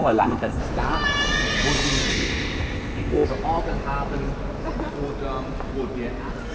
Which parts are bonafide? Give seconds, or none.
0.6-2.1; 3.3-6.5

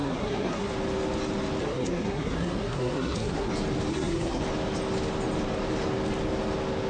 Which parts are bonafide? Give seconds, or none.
0.7-1.6; 3.5-3.9; 4.4-6.9

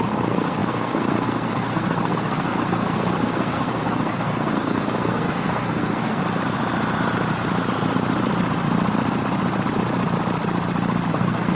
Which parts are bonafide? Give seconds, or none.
6.2-11.1

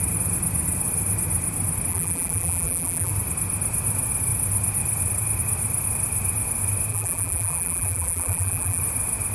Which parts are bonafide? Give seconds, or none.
0.0-1.9; 3.1-6.9; 8.8-9.3